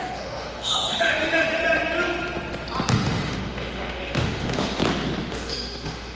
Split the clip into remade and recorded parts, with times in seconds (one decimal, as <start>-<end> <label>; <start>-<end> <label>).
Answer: 0.0-1.6 remade; 1.6-2.9 recorded; 2.9-4.8 remade; 4.8-5.3 recorded; 5.3-6.1 remade

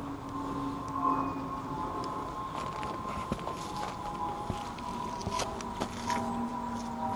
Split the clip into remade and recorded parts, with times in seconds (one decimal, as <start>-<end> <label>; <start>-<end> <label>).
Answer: 0.0-7.2 recorded

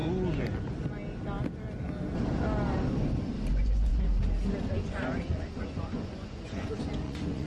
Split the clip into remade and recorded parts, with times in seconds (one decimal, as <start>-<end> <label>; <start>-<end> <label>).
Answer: 0.0-3.5 recorded; 3.5-4.1 remade; 4.1-4.7 recorded; 4.7-7.5 remade

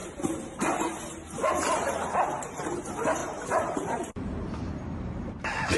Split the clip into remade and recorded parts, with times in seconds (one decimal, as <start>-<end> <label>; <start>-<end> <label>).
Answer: 0.0-0.6 remade; 0.6-3.2 recorded; 3.2-4.7 remade; 4.7-5.8 recorded

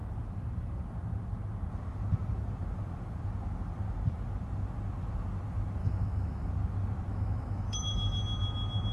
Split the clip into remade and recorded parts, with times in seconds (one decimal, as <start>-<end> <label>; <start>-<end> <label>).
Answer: 0.0-5.8 recorded; 5.8-6.5 remade; 6.5-7.1 recorded; 7.1-8.2 remade; 8.2-8.9 recorded